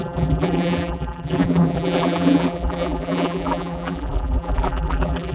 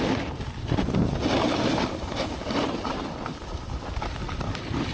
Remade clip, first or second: first